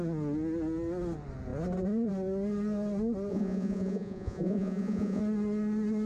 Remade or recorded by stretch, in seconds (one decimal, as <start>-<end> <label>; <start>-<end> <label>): 0.0-3.3 recorded; 3.3-5.2 remade; 5.2-6.1 recorded